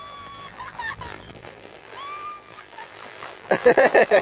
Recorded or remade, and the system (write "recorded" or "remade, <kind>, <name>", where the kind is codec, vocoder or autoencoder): remade, vocoder, BigVGAN v2